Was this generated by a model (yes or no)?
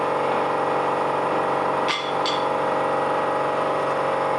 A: no